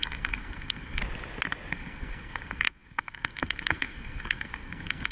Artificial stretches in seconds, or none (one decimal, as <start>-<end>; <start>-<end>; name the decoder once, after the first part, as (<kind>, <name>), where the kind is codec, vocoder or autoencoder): 0.0-1.0 (codec, SNAC); 1.7-5.1